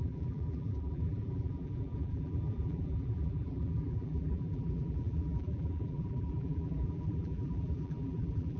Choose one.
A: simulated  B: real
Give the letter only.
A